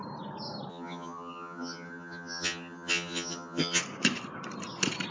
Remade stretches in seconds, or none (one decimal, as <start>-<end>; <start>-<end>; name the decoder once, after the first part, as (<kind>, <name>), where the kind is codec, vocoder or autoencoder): 0.7-3.8 (vocoder, HiFi-GAN)